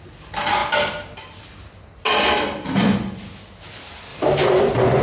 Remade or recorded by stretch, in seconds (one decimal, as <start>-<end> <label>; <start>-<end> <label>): 0.0-4.1 recorded; 4.1-4.6 remade; 4.6-5.0 recorded